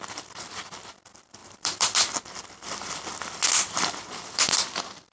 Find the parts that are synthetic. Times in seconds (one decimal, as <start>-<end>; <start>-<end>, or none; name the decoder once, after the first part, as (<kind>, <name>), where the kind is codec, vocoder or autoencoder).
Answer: 0.0-5.1 (vocoder, BigVGAN v2)